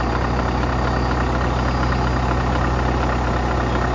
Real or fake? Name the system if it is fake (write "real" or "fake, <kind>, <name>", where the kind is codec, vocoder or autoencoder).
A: real